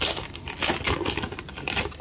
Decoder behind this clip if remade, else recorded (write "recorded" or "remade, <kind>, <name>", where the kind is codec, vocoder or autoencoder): recorded